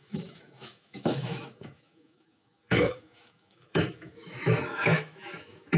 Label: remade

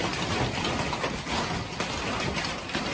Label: recorded